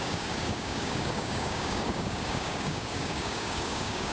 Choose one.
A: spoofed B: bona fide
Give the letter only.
A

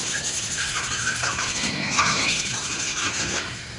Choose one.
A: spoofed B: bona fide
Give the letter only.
A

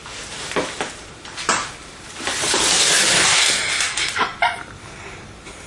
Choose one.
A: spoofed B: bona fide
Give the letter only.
A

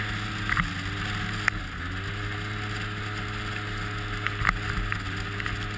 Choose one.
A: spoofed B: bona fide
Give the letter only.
B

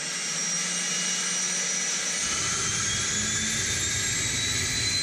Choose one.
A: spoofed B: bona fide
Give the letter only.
B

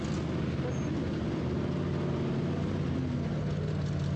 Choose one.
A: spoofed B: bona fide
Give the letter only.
B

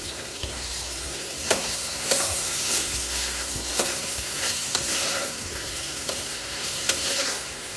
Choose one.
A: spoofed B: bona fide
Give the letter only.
A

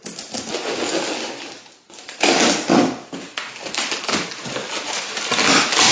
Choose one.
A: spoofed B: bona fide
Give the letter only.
B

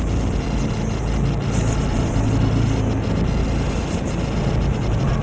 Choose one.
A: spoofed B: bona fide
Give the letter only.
B